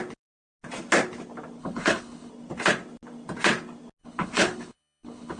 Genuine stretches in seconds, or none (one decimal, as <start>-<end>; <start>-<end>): 0.0-1.6; 2.3-4.0